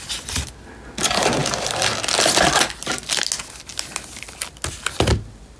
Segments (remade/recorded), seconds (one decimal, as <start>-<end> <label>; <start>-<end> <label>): 0.0-5.6 recorded